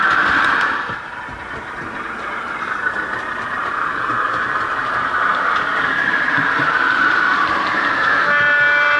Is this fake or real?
fake